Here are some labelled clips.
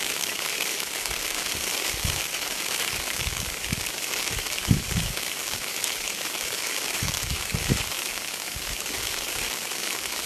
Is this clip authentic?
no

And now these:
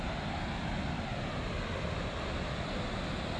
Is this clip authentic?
yes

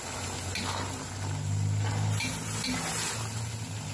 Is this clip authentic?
yes